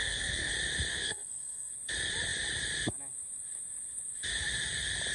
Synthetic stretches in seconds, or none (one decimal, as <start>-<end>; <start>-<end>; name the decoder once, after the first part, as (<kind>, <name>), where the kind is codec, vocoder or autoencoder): 0.0-0.5 (codec, SNAC); 0.9-1.7